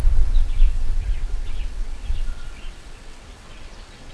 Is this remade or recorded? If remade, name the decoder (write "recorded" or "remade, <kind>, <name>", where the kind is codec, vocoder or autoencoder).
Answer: remade, vocoder, WaveNeXt